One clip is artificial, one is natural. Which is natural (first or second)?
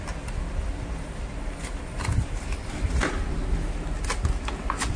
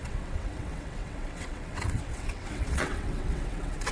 first